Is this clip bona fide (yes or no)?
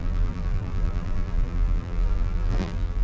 no